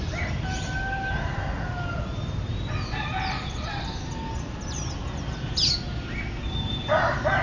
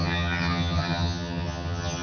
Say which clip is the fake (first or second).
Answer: second